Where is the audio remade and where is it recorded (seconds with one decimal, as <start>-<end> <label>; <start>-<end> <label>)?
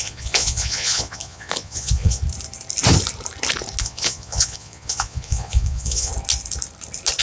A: 0.0-2.2 remade; 2.2-3.8 recorded; 3.8-6.1 remade; 6.1-7.2 recorded